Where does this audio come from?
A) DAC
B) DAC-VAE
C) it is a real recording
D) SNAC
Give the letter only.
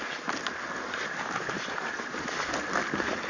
C